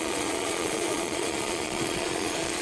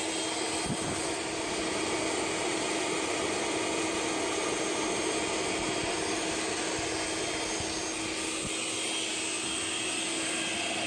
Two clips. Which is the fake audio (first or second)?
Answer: first